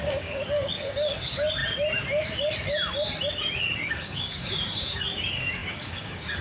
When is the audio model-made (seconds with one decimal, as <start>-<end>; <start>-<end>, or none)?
0.0-1.6; 3.9-6.4